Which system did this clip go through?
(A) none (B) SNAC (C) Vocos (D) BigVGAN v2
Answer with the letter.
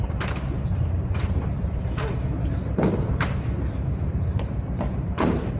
D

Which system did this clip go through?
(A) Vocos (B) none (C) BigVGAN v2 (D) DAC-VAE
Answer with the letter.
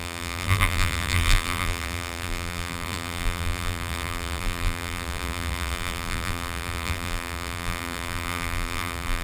C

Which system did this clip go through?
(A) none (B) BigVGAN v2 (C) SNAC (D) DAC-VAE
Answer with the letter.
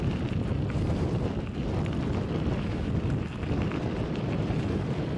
A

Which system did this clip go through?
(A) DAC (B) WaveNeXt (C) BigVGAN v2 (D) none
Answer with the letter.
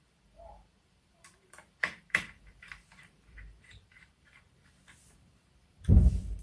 C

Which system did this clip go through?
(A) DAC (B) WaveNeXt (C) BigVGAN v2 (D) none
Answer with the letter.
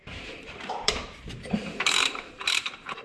C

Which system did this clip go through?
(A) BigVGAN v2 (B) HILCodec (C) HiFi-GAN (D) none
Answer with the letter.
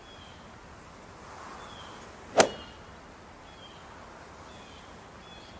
D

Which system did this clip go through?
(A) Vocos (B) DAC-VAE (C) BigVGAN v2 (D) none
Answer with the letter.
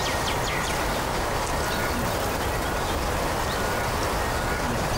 D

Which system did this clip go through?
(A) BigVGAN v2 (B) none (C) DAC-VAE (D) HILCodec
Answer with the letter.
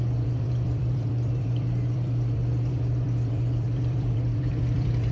A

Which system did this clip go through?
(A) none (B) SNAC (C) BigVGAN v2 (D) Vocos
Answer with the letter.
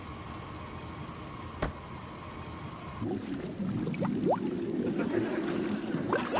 A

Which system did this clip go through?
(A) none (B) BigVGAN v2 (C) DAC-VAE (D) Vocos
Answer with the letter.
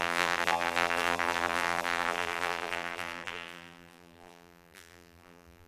B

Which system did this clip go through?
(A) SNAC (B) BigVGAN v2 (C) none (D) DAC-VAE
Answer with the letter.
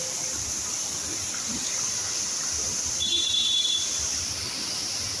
B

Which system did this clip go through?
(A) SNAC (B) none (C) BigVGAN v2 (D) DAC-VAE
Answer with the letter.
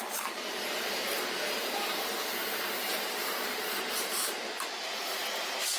C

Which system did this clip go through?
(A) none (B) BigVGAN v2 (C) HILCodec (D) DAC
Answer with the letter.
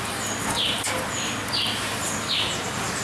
A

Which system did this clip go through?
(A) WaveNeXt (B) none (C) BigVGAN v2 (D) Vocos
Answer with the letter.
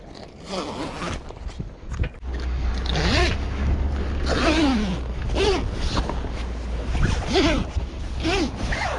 B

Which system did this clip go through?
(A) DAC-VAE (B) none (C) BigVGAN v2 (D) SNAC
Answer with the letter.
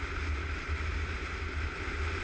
B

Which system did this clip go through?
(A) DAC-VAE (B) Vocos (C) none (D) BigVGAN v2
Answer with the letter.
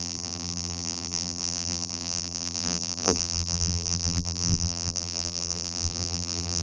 D